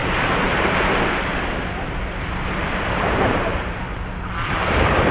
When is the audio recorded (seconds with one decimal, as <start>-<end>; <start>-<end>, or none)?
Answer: 1.0-2.6; 4.0-5.1